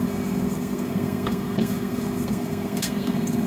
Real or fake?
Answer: fake